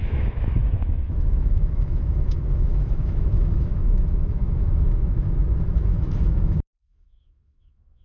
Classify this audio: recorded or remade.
remade